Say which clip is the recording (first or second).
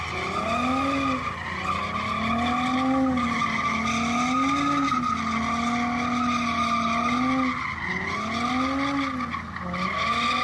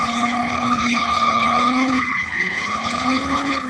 first